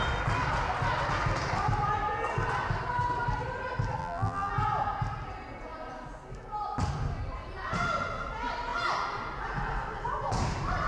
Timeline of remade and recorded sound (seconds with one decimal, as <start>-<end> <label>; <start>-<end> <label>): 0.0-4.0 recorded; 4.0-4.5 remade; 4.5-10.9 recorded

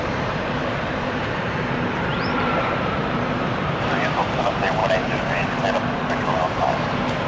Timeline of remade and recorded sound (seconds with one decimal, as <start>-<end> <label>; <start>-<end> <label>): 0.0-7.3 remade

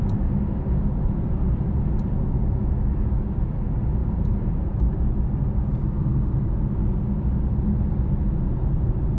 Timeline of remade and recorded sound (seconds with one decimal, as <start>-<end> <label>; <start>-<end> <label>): 0.0-4.0 recorded; 4.0-4.9 remade; 4.9-9.2 recorded

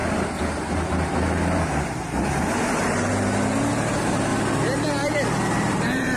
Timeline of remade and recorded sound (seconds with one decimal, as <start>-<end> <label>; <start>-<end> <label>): 0.0-4.3 remade; 4.3-5.5 recorded; 5.5-6.2 remade